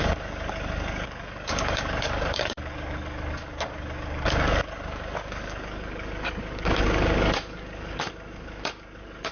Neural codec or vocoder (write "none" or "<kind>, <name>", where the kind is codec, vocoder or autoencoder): codec, DAC